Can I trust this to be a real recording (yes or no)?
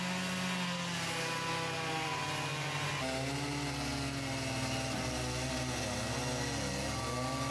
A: yes